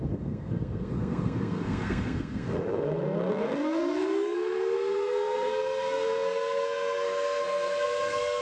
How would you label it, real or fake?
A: fake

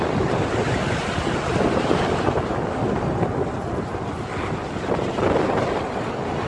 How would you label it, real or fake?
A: real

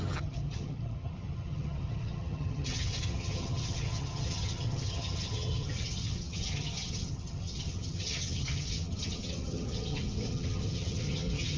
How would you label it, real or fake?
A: fake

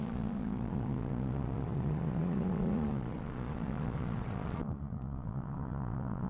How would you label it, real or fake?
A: fake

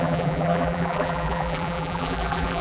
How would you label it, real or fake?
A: fake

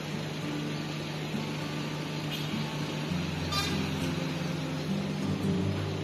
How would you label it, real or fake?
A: real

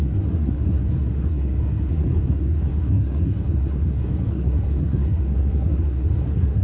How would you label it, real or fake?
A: fake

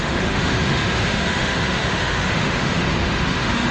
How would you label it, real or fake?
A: fake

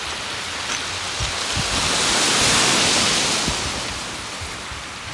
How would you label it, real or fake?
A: real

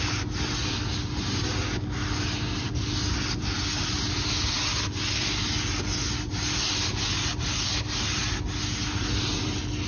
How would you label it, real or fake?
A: real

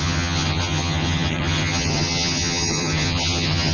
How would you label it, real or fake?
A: fake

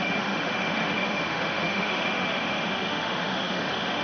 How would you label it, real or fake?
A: fake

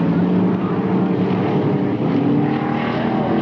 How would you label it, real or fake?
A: real